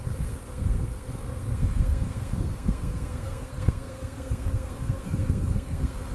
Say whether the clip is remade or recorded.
remade